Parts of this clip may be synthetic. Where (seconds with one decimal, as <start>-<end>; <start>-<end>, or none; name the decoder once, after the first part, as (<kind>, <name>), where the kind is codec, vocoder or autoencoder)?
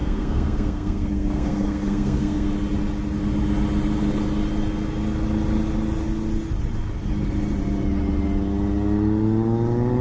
0.0-2.5 (codec, SNAC)